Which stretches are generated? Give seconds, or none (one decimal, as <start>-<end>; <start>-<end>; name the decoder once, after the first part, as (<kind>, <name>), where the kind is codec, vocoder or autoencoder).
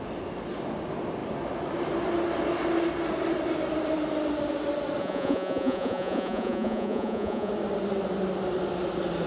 5.0-7.5 (vocoder, Vocos)